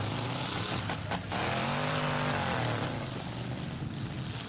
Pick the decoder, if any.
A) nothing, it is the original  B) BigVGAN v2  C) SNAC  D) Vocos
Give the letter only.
A